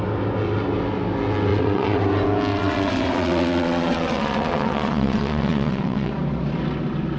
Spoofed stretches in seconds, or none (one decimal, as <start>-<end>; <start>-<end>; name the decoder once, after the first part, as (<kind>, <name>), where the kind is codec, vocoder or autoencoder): 1.5-2.0 (vocoder, WaveNeXt); 2.5-6.1